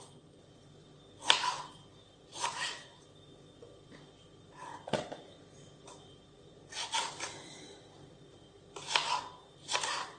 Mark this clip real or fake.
real